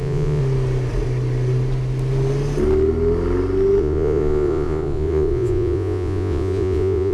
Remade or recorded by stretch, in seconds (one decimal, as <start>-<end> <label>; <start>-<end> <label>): 0.0-0.4 remade; 0.4-3.8 recorded; 3.8-7.1 remade